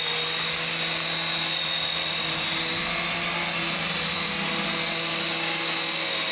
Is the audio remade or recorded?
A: recorded